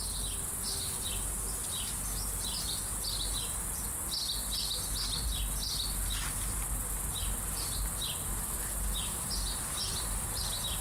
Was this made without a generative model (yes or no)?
yes